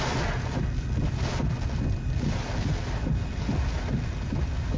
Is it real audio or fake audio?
real